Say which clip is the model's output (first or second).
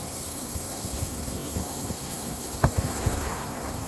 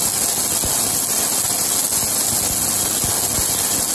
first